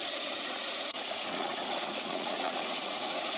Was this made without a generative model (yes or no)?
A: no